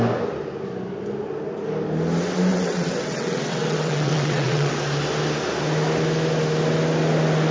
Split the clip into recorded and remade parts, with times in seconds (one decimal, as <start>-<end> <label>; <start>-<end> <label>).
0.0-2.5 recorded; 2.5-4.7 remade; 4.7-7.5 recorded